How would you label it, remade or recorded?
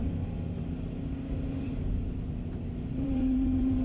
remade